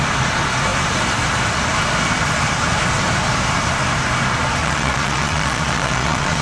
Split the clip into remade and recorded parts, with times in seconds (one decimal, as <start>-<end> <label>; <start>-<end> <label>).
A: 0.0-4.6 recorded; 4.6-6.4 remade